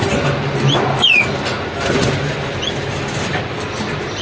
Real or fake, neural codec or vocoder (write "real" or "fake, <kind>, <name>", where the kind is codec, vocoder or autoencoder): real